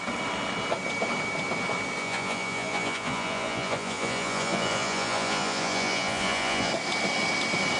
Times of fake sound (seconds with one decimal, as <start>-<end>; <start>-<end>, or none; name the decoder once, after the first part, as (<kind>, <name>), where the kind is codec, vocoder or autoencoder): 2.0-6.7 (vocoder, Vocos)